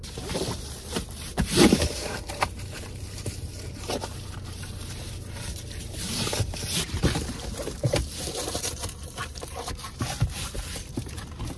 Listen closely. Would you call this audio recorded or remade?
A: remade